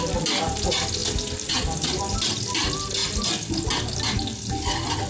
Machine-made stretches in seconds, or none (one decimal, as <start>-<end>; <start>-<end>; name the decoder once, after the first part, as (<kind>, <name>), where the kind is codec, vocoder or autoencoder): none